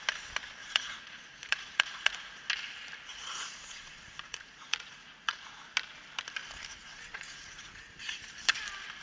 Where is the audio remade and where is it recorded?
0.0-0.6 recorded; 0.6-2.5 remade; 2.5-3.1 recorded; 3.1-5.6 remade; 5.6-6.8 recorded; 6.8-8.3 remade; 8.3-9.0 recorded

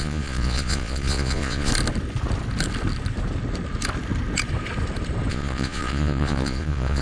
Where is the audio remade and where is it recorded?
0.0-1.7 remade; 1.7-5.3 recorded; 5.3-7.0 remade

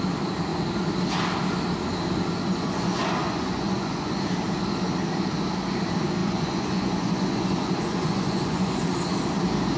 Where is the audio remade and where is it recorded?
0.0-2.5 recorded; 2.5-4.1 remade; 4.1-6.2 recorded; 6.2-8.8 remade; 8.8-9.8 recorded

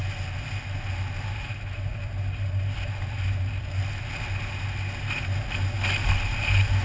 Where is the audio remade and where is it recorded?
0.0-6.8 recorded